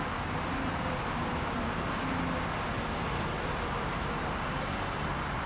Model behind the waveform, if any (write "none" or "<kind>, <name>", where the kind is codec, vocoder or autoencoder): none